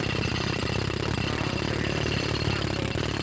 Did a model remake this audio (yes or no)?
no